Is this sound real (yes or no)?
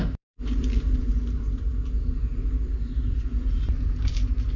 no